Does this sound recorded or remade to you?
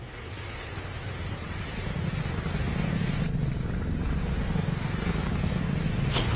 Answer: recorded